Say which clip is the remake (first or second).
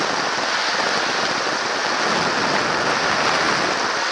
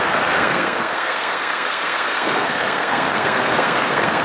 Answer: second